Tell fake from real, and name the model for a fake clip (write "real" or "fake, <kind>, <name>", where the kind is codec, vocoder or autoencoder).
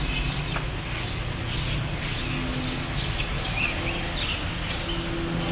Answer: real